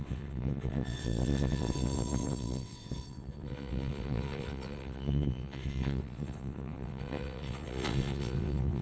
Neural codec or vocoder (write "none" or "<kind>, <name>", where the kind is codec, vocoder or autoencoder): vocoder, WaveNeXt